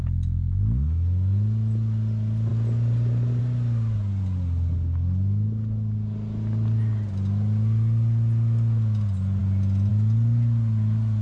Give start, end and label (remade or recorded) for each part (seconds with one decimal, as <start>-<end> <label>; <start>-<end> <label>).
0.0-11.2 recorded

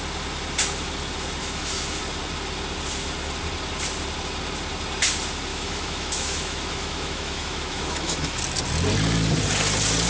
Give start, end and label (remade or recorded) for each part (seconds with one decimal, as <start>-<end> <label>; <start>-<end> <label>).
0.0-1.4 recorded; 1.4-2.0 remade; 2.0-5.5 recorded; 5.5-8.4 remade; 8.4-10.1 recorded

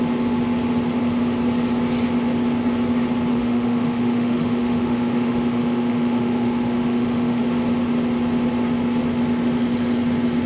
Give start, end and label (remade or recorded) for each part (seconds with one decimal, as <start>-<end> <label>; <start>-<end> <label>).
0.0-3.3 recorded; 3.3-7.4 remade; 7.4-10.5 recorded

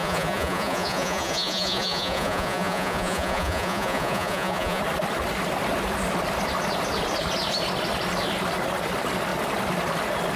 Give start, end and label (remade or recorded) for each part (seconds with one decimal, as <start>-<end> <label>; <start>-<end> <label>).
0.0-4.8 remade; 4.8-10.4 recorded

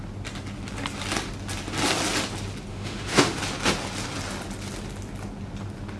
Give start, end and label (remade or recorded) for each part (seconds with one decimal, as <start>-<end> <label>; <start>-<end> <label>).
0.0-2.7 recorded; 2.7-3.4 remade; 3.4-6.0 recorded

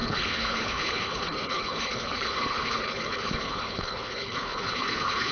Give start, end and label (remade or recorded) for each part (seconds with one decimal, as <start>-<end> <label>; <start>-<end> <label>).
0.0-5.3 remade

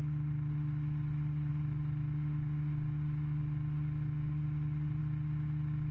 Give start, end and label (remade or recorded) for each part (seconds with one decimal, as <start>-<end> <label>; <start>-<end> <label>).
0.0-5.9 recorded

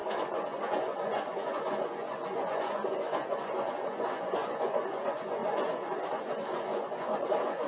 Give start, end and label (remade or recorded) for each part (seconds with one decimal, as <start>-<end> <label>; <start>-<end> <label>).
0.0-7.7 remade